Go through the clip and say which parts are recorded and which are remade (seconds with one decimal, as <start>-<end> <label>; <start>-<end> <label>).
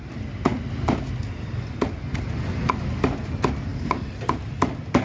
0.0-3.7 recorded; 3.7-4.5 remade; 4.5-5.0 recorded